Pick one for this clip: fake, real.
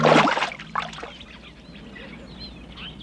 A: real